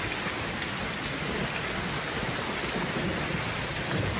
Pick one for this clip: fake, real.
real